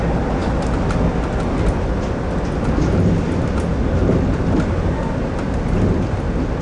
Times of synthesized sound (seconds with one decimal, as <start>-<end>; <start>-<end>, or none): none